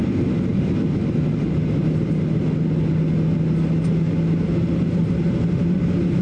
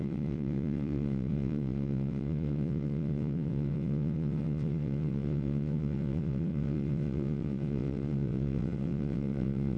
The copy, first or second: second